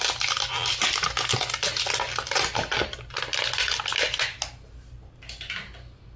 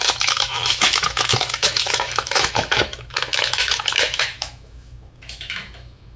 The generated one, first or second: second